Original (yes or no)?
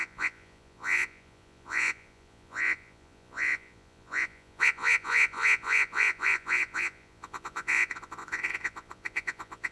no